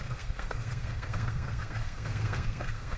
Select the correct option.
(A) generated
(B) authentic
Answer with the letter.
A